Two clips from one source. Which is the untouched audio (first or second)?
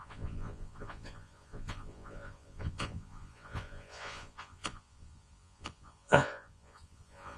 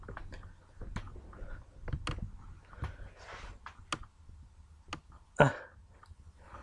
second